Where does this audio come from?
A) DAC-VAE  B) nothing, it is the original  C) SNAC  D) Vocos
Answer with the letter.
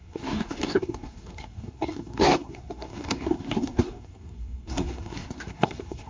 C